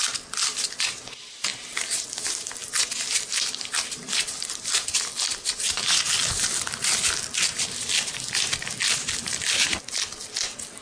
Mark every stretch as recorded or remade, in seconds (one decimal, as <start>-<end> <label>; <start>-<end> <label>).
0.0-10.8 recorded